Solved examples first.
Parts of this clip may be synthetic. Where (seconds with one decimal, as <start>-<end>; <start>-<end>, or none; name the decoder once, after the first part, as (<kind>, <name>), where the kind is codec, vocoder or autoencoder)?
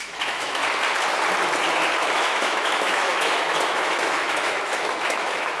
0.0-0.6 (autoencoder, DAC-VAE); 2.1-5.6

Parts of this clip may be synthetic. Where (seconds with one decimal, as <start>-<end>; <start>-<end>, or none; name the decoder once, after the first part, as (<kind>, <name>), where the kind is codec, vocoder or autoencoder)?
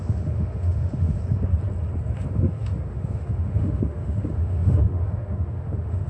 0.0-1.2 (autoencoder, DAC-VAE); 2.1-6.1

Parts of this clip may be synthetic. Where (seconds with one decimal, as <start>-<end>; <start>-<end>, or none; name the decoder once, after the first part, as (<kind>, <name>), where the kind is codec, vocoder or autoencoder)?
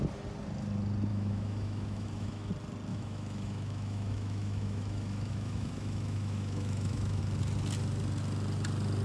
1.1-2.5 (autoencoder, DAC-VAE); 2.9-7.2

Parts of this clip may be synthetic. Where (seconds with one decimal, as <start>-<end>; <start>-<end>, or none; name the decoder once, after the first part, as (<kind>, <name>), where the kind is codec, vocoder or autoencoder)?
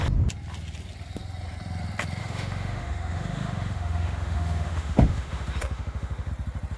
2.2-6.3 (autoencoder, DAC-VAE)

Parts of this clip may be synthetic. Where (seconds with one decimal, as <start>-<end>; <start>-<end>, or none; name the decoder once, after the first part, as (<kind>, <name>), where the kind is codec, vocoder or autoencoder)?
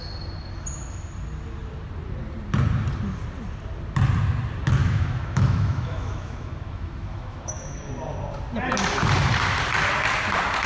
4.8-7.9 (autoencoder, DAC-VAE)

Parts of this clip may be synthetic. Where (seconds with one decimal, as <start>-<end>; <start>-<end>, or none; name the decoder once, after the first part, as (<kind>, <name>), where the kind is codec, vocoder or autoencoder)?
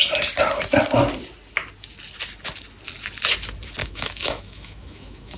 3.8-5.4 (autoencoder, DAC-VAE)